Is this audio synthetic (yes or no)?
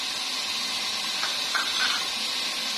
no